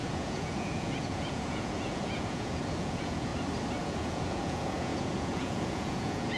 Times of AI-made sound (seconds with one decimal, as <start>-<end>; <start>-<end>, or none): 0.0-3.3; 3.8-6.4